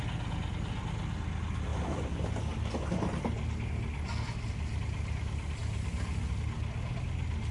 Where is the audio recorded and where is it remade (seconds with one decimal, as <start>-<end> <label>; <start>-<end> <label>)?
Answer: 0.0-7.5 recorded